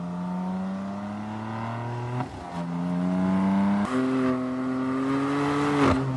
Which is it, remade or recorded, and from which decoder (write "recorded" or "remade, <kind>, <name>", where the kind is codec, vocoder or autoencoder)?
recorded